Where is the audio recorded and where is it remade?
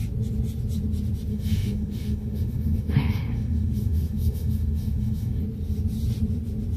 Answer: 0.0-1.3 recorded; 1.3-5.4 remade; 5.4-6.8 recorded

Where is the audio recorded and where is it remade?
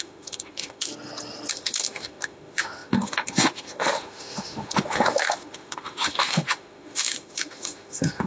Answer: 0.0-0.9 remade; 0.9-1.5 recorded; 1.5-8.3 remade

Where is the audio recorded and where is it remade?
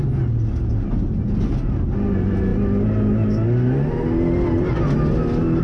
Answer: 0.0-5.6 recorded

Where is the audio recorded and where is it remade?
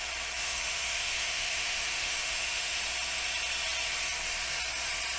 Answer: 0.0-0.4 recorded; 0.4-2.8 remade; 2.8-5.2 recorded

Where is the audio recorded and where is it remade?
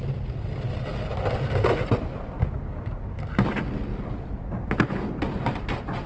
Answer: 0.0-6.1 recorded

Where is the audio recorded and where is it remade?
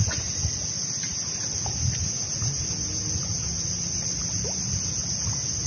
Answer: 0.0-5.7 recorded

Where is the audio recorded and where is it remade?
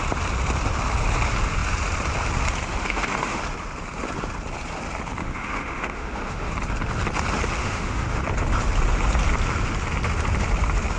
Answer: 0.0-2.8 recorded; 2.8-3.4 remade; 3.4-5.2 recorded; 5.2-6.5 remade; 6.5-7.6 recorded; 7.6-8.2 remade; 8.2-11.0 recorded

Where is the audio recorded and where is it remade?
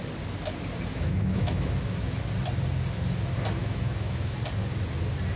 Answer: 0.0-0.9 recorded; 0.9-2.2 remade; 2.2-3.6 recorded; 3.6-4.4 remade; 4.4-5.4 recorded